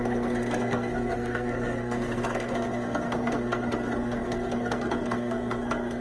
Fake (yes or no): yes